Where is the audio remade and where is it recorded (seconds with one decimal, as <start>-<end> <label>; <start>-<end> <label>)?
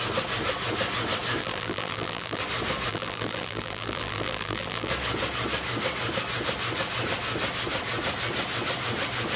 0.0-1.4 recorded; 1.4-2.4 remade; 2.4-2.9 recorded; 2.9-4.9 remade; 4.9-9.4 recorded